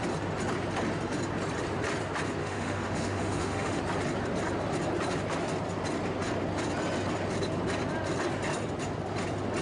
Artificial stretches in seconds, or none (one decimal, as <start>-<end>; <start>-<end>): 2.4-3.8